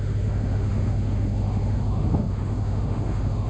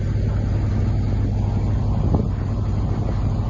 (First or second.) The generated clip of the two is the first